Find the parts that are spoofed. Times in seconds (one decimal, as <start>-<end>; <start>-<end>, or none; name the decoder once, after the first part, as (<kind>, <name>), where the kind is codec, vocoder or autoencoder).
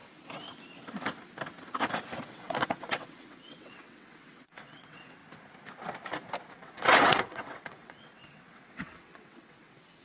2.3-5.2 (vocoder, WaveNeXt); 6.5-10.0